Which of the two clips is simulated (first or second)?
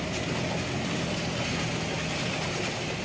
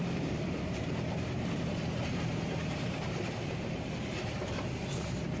second